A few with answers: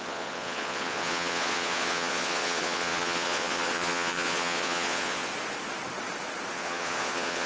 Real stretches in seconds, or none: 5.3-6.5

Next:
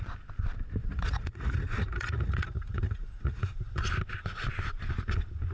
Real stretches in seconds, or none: 0.0-0.8; 3.9-5.5

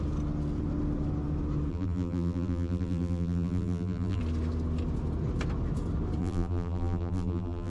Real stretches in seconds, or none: 0.0-1.7; 4.2-6.2

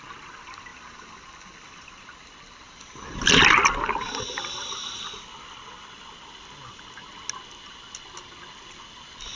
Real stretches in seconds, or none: 0.0-9.4

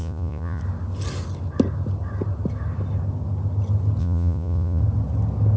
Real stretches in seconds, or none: 0.6-4.0; 4.8-5.6

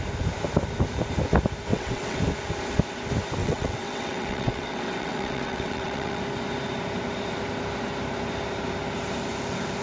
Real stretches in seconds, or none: 0.0-1.7; 2.2-3.4; 6.2-9.8

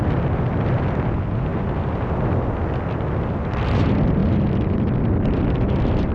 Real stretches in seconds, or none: 1.5-3.8; 4.2-5.0